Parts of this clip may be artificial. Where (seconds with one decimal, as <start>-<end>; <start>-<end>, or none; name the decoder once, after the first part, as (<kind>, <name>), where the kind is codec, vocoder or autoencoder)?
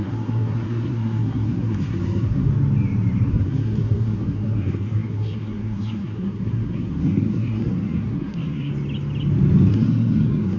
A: 0.0-2.5 (codec, SNAC); 3.3-8.7; 9.7-10.6